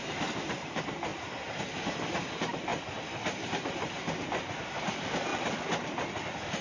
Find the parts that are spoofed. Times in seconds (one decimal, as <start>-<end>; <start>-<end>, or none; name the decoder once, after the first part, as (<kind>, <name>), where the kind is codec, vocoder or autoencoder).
0.0-2.7 (vocoder, BigVGAN v2); 4.2-5.3